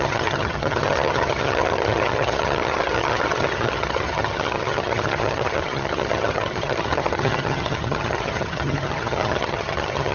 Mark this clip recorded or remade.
remade